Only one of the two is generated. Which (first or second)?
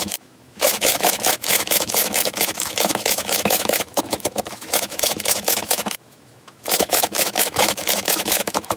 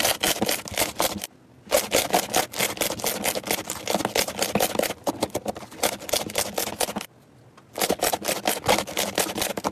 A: first